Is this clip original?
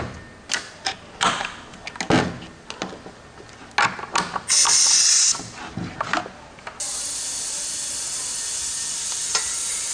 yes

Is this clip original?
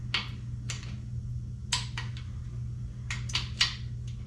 yes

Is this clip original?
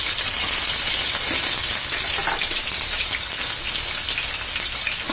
yes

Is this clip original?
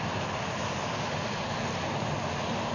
yes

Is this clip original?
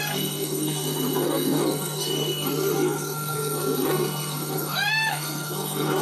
no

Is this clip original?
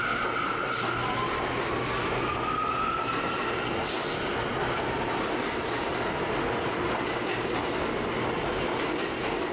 yes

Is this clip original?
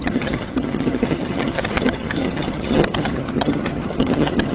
no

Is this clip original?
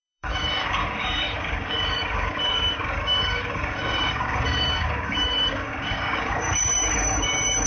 no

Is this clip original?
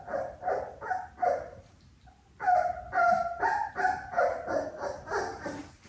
yes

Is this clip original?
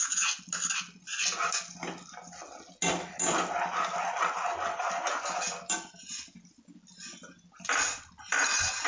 yes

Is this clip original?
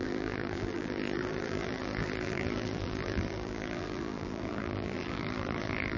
no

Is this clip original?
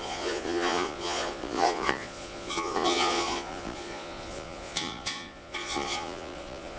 no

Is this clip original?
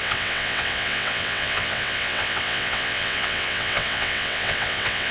no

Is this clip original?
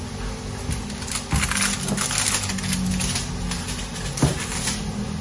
yes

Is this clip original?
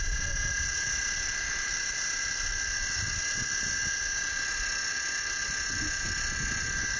yes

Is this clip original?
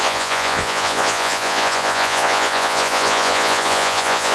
no